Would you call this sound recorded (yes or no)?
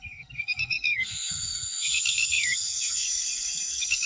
no